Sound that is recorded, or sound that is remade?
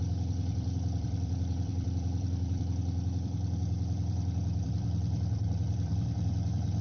remade